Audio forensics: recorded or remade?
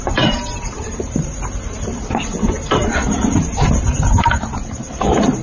remade